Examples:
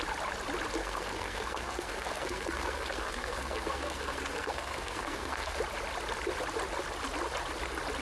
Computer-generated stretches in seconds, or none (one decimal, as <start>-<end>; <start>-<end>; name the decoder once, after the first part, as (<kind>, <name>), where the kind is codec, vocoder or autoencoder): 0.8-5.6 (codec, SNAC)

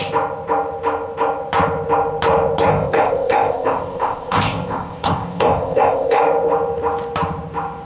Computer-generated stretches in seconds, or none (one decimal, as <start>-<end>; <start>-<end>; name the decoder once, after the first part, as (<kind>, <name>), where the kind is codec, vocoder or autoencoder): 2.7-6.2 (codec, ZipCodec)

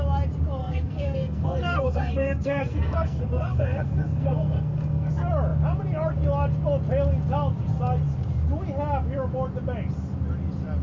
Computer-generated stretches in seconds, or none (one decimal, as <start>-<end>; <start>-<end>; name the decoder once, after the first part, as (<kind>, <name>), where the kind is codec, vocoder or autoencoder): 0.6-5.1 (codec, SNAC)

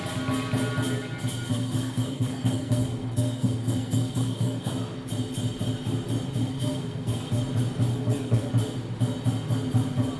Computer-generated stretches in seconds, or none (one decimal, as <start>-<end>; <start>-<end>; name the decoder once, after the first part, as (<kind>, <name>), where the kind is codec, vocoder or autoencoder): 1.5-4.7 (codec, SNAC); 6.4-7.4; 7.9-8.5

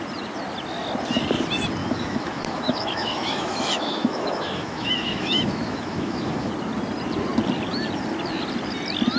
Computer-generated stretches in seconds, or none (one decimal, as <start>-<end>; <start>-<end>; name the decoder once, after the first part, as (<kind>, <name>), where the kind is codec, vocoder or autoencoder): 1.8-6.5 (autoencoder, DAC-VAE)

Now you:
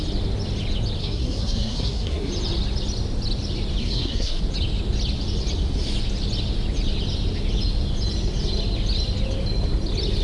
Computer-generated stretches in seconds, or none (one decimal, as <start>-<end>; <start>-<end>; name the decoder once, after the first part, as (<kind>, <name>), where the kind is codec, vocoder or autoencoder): 1.0-2.3 (codec, SNAC); 3.8-4.4